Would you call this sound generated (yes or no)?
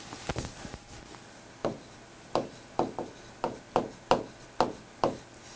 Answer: no